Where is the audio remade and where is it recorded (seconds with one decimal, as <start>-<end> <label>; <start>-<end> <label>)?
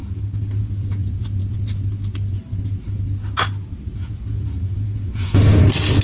0.0-0.9 remade; 0.9-4.0 recorded; 4.0-5.6 remade; 5.6-6.0 recorded